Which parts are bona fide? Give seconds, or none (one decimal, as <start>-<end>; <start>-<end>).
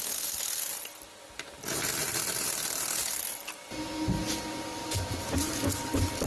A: 0.0-6.3